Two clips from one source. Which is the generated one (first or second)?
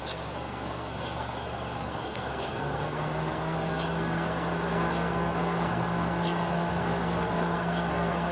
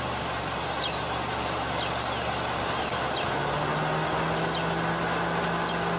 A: first